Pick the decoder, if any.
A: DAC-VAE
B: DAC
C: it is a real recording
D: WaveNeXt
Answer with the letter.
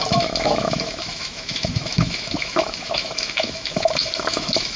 A